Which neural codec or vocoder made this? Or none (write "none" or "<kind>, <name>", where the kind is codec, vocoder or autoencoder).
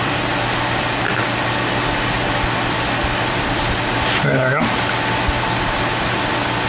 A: none